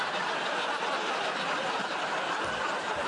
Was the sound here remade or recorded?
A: recorded